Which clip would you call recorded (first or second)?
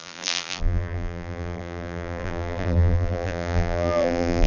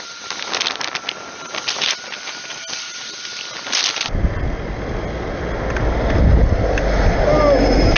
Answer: second